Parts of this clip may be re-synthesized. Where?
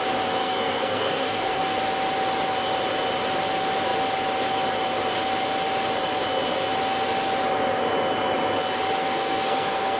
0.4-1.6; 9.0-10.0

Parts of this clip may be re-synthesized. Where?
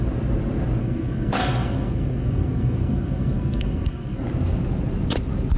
0.8-4.2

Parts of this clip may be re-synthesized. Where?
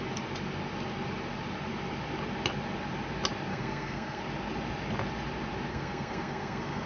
3.5-4.2; 5.7-6.9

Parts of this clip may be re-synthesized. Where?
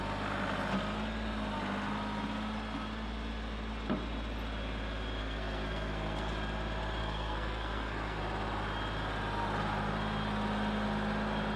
5.2-6.3; 7.0-8.2